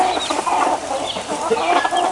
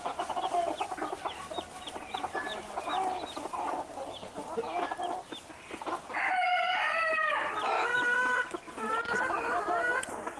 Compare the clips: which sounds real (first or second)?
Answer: second